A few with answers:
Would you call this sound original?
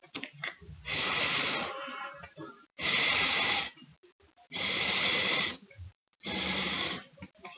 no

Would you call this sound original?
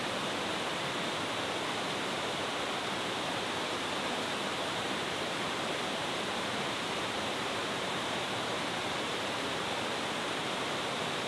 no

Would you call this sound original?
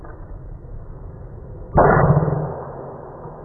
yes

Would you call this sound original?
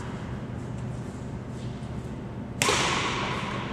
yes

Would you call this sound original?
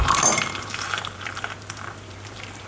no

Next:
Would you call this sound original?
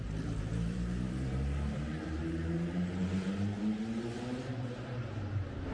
no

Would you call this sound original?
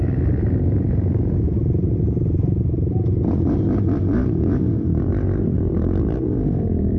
no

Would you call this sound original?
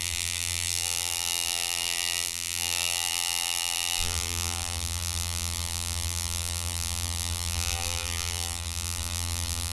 no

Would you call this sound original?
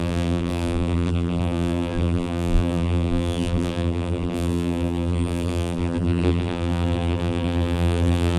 no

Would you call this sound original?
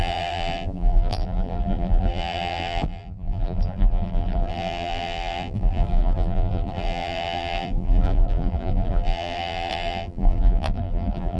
no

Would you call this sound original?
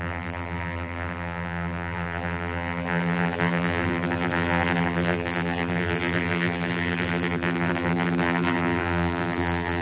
no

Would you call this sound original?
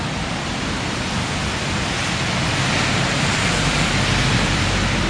no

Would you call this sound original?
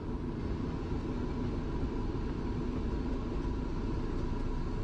yes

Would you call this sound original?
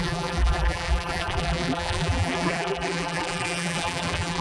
no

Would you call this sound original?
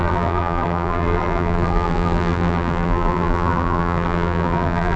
no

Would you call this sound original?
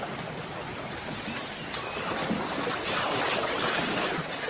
yes